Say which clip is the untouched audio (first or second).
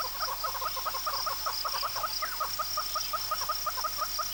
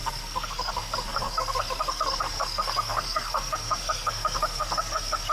first